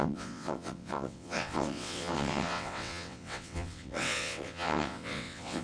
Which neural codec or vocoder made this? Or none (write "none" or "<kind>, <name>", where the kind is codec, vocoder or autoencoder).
vocoder, WaveNeXt